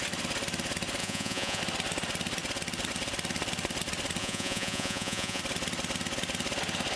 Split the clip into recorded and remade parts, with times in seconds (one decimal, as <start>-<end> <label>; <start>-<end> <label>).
0.0-1.0 recorded; 1.0-1.6 remade; 1.6-4.2 recorded; 4.2-5.4 remade; 5.4-7.0 recorded